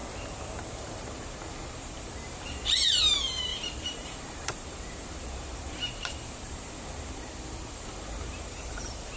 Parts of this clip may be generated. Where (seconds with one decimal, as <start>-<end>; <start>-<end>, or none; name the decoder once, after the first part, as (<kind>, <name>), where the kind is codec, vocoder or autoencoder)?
0.6-9.2 (vocoder, BigVGAN v2)